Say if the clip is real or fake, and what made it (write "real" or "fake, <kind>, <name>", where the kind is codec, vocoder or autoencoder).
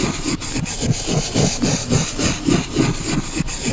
fake, vocoder, BigVGAN v2